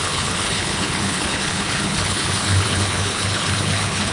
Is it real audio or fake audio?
fake